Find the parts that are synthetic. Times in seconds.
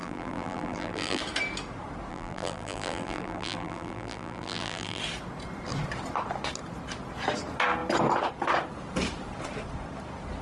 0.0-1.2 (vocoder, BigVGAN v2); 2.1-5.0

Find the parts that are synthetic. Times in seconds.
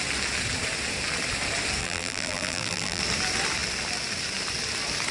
1.8-3.0 (vocoder, BigVGAN v2)